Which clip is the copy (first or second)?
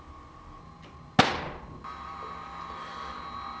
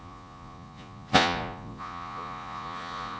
second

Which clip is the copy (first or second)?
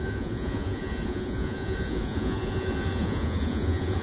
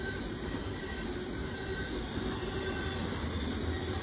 first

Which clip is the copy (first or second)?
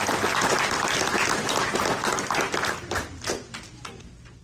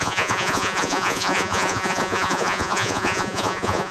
second